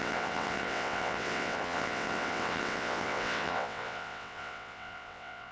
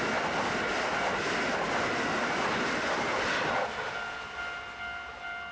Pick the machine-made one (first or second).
first